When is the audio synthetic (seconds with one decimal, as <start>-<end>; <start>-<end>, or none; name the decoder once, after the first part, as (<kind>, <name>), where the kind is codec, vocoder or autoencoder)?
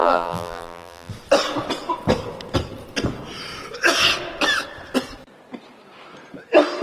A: 0.0-1.1 (vocoder, BigVGAN v2)